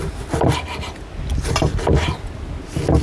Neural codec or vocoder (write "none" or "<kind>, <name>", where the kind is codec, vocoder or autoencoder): none